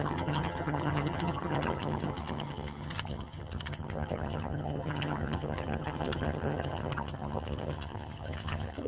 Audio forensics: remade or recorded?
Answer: remade